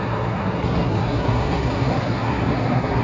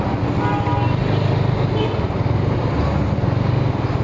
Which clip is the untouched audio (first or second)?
second